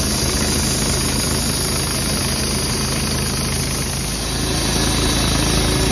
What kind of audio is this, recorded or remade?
recorded